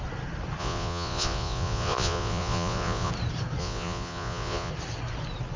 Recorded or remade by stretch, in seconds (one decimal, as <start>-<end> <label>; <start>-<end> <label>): 0.0-0.6 recorded; 0.6-3.1 remade; 3.1-3.6 recorded; 3.6-4.7 remade; 4.7-5.6 recorded